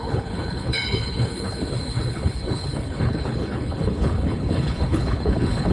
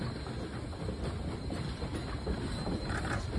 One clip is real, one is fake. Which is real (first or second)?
second